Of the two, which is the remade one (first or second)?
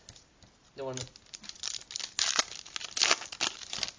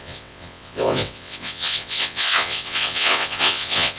second